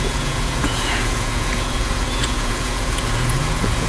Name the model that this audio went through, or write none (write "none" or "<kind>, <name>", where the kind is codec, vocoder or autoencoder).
vocoder, Vocos